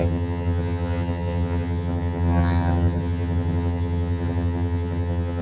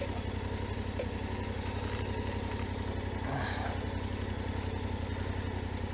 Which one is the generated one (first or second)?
first